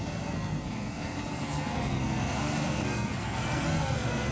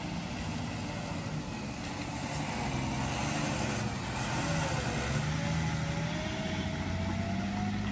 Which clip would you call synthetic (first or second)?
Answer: first